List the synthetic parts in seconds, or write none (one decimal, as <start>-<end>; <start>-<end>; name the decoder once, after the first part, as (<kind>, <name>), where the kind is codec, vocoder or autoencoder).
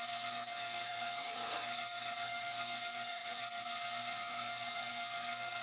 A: 0.0-5.6 (codec, SNAC)